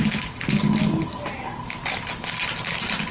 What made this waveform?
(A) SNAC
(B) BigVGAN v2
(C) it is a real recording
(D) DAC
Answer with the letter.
C